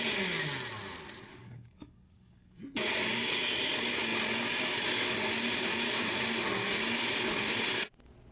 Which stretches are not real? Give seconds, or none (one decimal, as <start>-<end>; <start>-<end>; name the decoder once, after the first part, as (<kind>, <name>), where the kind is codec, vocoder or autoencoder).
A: 1.3-2.6 (codec, DAC)

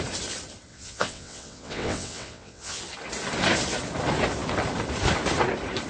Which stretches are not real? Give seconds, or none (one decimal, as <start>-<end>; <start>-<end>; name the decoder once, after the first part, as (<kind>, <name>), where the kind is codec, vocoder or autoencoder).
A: 0.7-2.8 (vocoder, WaveNeXt)

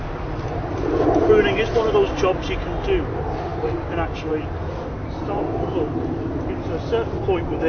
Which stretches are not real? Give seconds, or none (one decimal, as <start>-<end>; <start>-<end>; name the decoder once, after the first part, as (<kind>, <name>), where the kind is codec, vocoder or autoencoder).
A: none